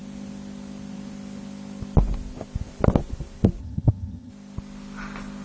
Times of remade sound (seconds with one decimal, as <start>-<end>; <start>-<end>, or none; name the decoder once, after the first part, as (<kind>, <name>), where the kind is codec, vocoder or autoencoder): 3.6-4.3 (vocoder, HiFi-GAN)